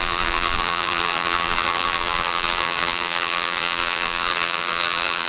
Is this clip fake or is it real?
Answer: fake